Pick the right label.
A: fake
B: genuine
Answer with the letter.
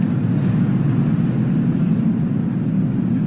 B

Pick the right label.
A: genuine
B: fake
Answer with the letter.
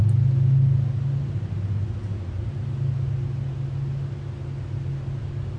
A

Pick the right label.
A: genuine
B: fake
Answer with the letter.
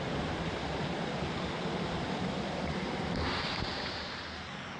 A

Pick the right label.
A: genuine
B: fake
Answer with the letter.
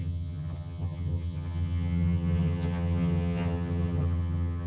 B